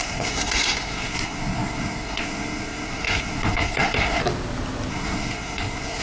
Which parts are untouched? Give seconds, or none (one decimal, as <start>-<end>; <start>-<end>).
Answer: 4.2-4.9